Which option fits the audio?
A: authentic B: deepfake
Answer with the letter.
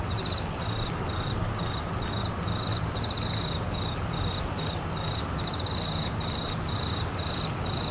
A